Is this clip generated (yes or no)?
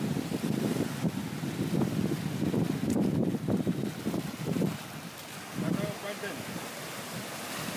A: no